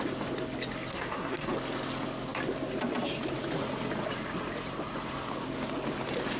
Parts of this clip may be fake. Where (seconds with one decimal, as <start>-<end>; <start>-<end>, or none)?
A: 0.9-1.5

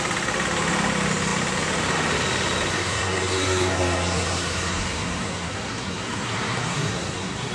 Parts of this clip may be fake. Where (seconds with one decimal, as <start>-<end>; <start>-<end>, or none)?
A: 2.7-7.5

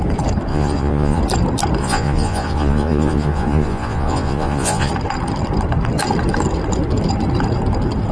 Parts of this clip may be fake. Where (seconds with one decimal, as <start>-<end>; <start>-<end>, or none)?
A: 0.5-1.2; 1.8-4.9

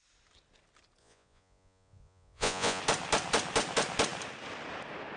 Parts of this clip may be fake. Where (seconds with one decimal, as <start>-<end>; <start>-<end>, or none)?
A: 1.0-2.8